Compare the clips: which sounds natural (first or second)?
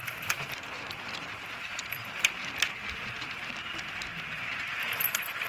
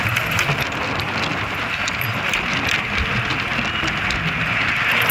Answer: second